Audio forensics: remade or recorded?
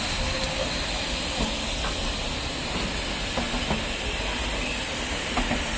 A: recorded